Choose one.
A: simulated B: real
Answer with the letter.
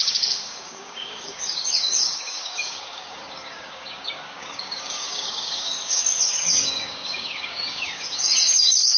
A